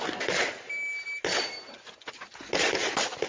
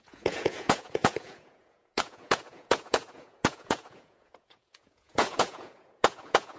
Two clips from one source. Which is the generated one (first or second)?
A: second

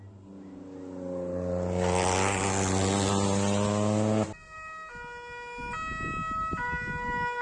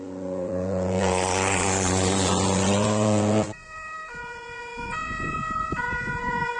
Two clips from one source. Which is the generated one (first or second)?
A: second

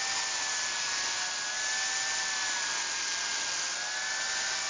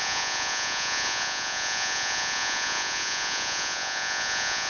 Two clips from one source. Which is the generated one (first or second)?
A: second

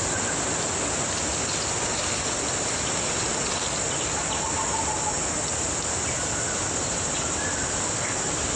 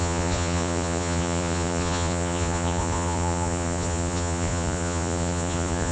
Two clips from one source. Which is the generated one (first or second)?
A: second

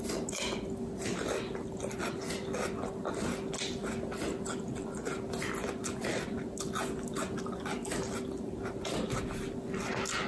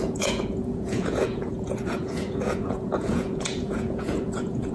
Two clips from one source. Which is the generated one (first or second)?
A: second